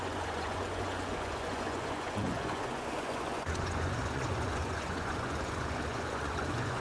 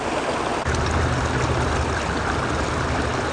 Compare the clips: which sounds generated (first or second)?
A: first